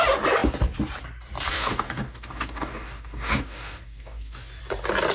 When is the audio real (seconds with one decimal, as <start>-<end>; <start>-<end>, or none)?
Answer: 0.0-1.5; 4.6-5.1